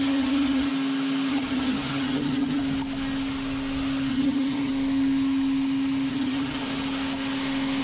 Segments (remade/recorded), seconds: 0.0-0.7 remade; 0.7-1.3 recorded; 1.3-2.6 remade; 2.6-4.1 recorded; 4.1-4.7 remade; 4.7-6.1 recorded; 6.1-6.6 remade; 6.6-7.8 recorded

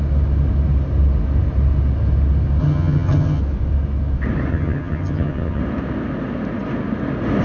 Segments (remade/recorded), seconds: 0.0-2.6 recorded; 2.6-3.4 remade; 3.4-4.5 recorded; 4.5-5.6 remade; 5.6-7.4 recorded